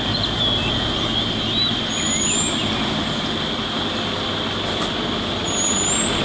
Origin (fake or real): real